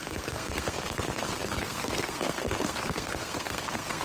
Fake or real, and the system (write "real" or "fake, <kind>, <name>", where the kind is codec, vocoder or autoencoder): fake, codec, SNAC